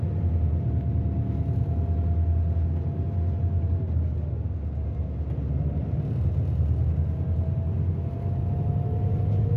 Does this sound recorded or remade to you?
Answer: recorded